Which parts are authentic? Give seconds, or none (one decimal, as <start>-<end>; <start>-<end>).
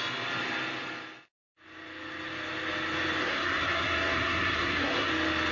0.0-3.2; 5.1-5.5